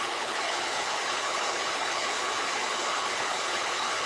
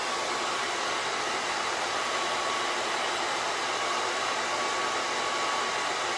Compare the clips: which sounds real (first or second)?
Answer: second